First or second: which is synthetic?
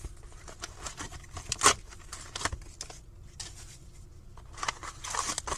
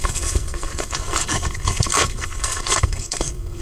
second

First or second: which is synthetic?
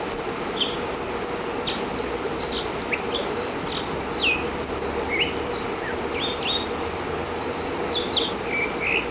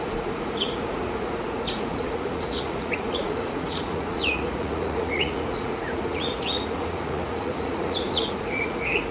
second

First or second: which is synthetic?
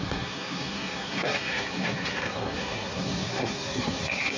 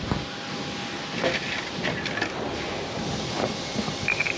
first